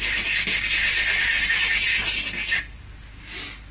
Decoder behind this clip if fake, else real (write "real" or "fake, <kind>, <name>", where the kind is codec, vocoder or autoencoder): real